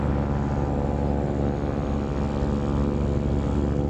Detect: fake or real real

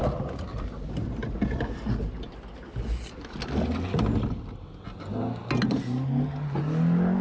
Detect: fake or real real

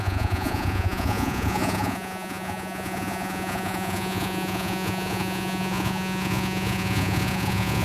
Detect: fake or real fake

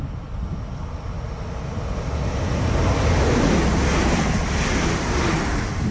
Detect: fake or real real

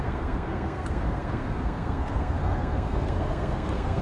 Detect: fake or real fake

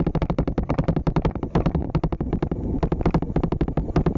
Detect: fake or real fake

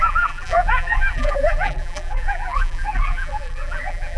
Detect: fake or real fake